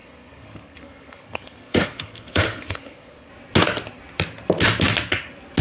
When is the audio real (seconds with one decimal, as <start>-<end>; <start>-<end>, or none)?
3.3-5.6